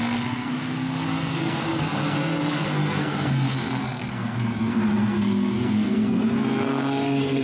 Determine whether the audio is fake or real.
fake